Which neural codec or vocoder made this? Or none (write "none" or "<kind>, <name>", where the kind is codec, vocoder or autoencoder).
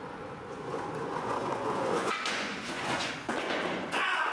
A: vocoder, Vocos